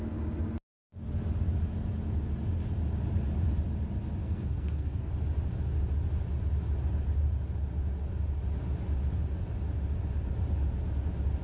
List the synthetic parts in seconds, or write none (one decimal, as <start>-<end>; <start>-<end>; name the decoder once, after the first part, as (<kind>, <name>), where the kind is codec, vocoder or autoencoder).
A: 4.2-5.1 (codec, SNAC)